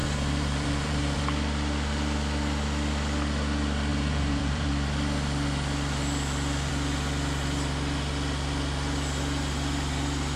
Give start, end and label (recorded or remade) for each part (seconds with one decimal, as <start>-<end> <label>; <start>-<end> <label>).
0.0-1.2 remade; 1.2-3.9 recorded; 3.9-4.7 remade; 4.7-10.4 recorded